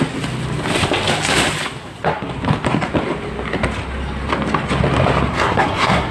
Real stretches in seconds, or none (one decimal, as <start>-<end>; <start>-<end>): 0.0-1.8; 2.3-5.3